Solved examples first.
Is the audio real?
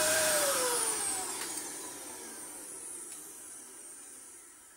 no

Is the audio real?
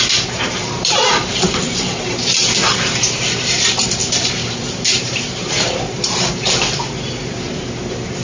no